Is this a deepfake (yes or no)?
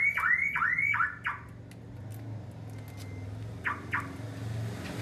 no